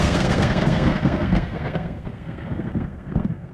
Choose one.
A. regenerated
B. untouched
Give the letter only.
A